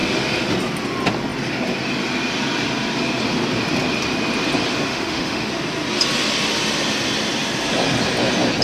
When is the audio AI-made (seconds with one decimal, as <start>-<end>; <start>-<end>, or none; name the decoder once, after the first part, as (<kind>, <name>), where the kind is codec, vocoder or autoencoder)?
4.9-5.5 (autoencoder, DAC-VAE)